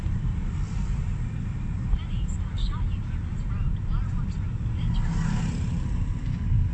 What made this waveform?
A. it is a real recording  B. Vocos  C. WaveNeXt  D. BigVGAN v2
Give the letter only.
A